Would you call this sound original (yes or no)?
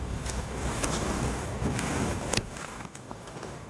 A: no